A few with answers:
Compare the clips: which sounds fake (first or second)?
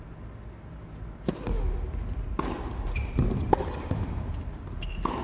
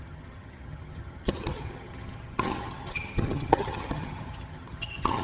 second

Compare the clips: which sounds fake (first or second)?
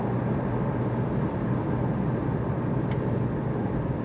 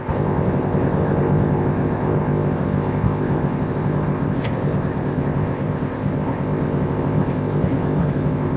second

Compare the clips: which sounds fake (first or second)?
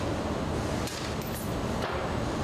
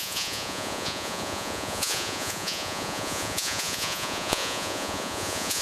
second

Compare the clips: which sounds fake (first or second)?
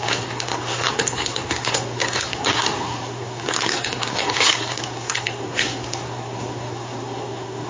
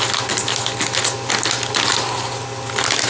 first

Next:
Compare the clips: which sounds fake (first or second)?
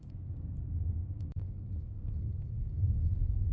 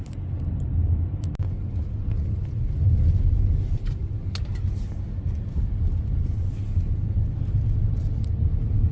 first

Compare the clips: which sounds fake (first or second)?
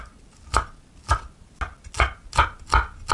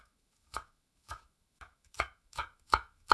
second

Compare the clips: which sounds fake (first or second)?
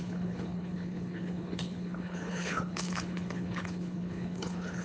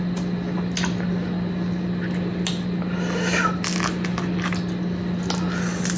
first